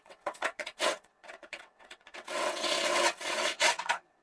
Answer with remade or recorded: remade